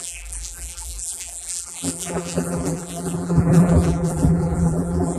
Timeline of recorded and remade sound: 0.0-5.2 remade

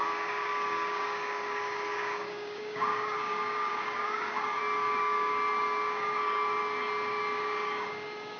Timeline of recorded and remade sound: 0.0-8.4 remade

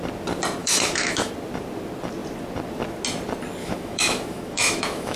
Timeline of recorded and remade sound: 0.0-0.6 recorded; 0.6-1.3 remade; 1.3-3.6 recorded; 3.6-5.2 remade

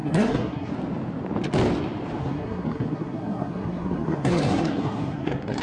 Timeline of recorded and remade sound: 0.0-0.7 remade; 0.7-2.2 recorded; 2.2-5.6 remade

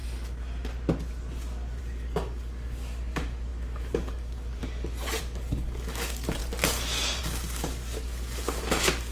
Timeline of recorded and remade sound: 0.0-1.8 recorded; 1.8-4.6 remade; 4.6-5.2 recorded; 5.2-6.4 remade; 6.4-7.2 recorded; 7.2-9.1 remade